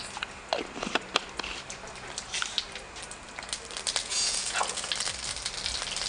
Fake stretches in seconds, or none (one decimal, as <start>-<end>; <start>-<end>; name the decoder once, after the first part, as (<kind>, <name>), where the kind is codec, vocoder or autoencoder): 4.0-4.9 (vocoder, Vocos)